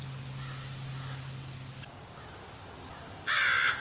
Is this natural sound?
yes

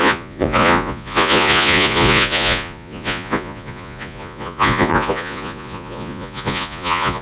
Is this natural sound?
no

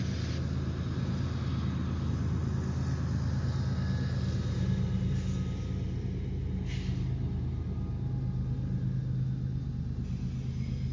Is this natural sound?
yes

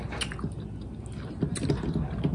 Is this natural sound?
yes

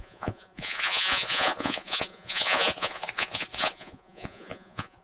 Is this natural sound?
no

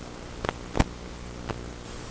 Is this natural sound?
yes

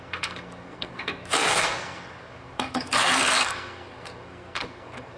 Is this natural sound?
no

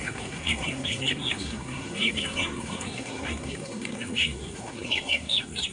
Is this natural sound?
no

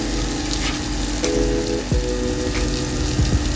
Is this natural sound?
yes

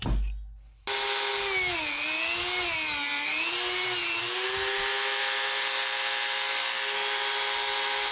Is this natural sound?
yes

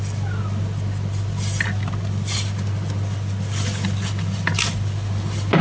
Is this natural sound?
yes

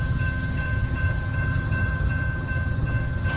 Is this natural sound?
no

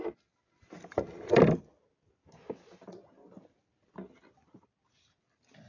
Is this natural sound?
yes